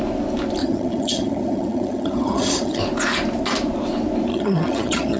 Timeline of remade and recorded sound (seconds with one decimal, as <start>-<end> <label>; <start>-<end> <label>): 0.0-0.6 recorded; 0.6-2.8 remade; 2.8-4.3 recorded; 4.3-5.2 remade